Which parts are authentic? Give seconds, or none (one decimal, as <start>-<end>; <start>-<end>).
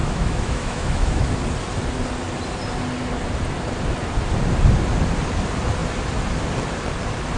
1.4-7.4